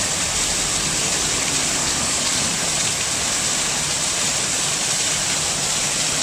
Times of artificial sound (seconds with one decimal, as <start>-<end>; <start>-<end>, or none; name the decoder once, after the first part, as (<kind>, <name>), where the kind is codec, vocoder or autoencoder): 1.8-2.5 (codec, DAC)